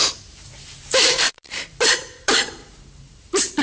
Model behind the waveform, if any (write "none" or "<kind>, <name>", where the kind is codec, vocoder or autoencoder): vocoder, BigVGAN v2